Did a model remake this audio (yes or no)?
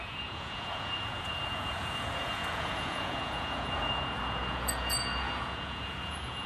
yes